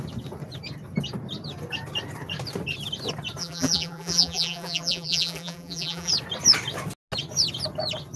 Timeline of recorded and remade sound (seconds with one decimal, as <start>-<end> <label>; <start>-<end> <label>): 0.0-3.4 recorded; 3.4-6.1 remade; 6.1-8.2 recorded